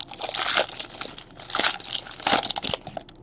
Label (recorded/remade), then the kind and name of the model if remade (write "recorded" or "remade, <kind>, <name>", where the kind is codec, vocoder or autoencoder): recorded